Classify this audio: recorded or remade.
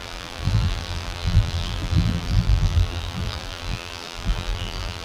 remade